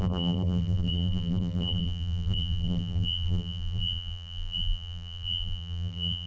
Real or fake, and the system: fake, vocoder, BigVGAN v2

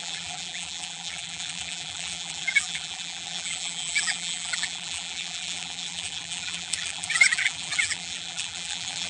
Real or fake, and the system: fake, vocoder, BigVGAN v2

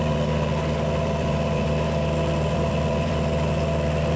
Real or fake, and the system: fake, vocoder, BigVGAN v2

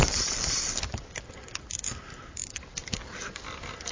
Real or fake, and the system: fake, vocoder, BigVGAN v2